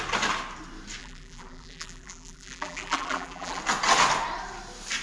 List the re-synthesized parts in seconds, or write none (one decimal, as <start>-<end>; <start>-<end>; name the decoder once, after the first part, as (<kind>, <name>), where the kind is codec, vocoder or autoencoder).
1.0-3.6 (vocoder, BigVGAN v2)